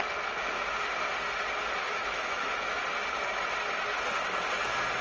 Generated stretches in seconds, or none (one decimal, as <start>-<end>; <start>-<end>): 1.8-2.8